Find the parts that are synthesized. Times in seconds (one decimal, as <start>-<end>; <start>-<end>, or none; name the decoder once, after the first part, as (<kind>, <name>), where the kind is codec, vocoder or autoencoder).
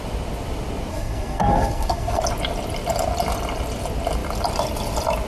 0.9-2.2 (codec, SNAC)